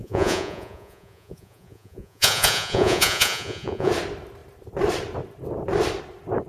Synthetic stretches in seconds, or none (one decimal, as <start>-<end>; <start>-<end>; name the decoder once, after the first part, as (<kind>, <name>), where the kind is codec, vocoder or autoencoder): 0.0-3.9 (vocoder, Vocos)